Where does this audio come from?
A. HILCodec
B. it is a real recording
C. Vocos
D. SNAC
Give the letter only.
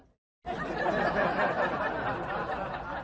B